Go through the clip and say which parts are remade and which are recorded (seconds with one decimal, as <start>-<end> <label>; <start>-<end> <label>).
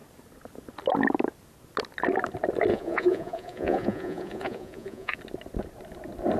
0.0-2.7 recorded; 2.7-5.2 remade; 5.2-6.4 recorded